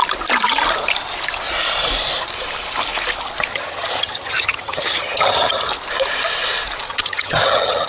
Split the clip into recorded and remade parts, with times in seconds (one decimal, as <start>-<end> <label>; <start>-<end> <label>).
0.0-3.5 recorded; 3.5-5.7 remade; 5.7-6.9 recorded; 6.9-7.9 remade